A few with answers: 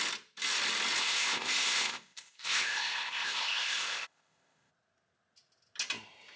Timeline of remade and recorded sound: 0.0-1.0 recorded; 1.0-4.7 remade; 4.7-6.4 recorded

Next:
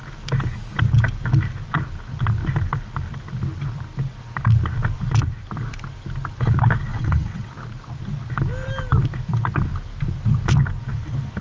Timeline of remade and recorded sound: 0.0-6.9 recorded; 6.9-7.5 remade; 7.5-11.4 recorded

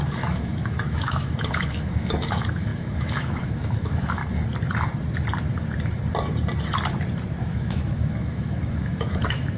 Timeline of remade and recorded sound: 0.0-4.2 remade; 4.2-7.4 recorded; 7.4-9.6 remade

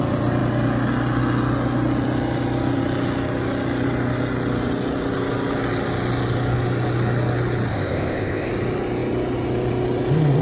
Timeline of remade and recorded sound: 0.0-7.7 recorded; 7.7-8.5 remade; 8.5-10.4 recorded

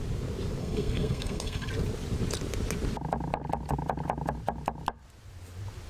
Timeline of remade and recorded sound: 0.0-0.6 recorded; 0.6-1.7 remade; 1.7-5.9 recorded

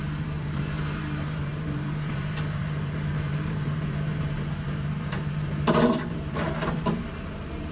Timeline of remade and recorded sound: 0.0-7.7 remade

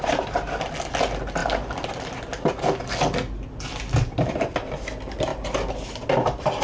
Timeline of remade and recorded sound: 0.0-6.6 recorded

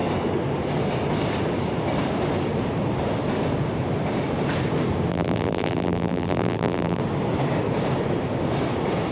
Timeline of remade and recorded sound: 0.0-5.1 recorded; 5.1-7.0 remade; 7.0-9.1 recorded